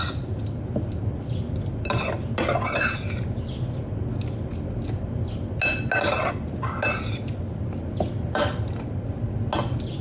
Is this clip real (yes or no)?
yes